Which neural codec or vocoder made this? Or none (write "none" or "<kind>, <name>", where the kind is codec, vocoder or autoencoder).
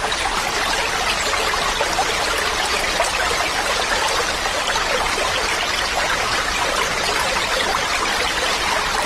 none